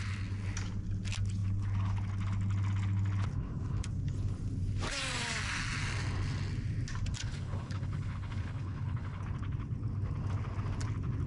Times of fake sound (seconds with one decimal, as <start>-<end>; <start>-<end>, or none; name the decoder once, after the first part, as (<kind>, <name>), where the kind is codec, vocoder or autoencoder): 7.2-9.2 (codec, HILCodec)